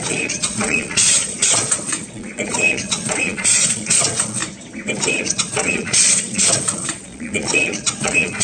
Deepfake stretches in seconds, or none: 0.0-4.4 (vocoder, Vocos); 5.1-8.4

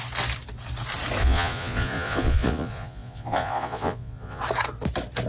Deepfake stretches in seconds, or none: 1.2-4.4 (vocoder, Vocos)

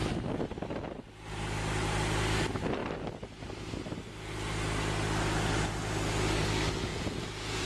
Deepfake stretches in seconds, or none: 6.9-7.7 (vocoder, Vocos)

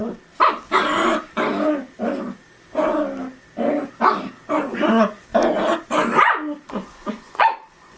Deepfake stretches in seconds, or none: 4.7-5.3 (vocoder, Vocos); 6.7-8.0

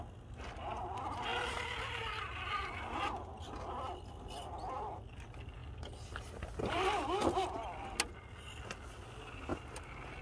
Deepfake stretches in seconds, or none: none

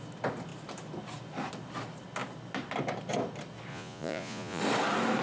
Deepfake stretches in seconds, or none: 3.7-4.6 (vocoder, Vocos)

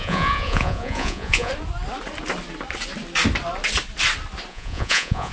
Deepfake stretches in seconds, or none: 0.0-1.5 (vocoder, Vocos); 4.5-5.3

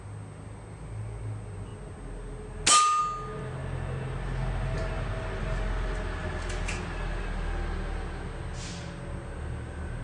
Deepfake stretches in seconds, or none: none